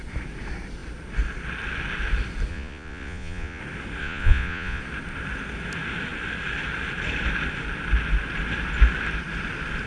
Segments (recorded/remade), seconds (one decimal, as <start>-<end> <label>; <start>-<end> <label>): 0.0-2.5 recorded; 2.5-3.6 remade; 3.6-4.0 recorded; 4.0-4.8 remade; 4.8-9.9 recorded